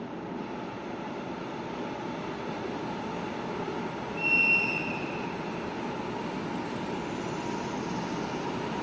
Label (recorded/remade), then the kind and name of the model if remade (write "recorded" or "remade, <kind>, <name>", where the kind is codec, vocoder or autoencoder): recorded